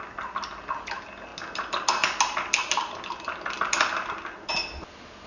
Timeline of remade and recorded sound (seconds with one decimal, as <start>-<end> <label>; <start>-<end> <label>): 0.0-5.3 recorded